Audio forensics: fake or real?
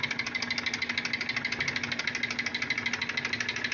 real